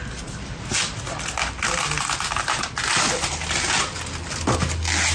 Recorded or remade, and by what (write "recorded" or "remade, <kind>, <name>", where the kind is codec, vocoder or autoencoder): recorded